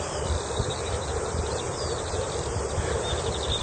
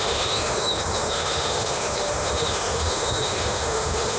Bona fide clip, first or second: first